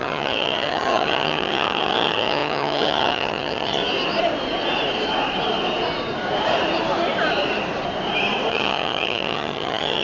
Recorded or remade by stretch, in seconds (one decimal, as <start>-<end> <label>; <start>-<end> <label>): 0.0-3.8 remade; 3.8-8.5 recorded; 8.5-10.0 remade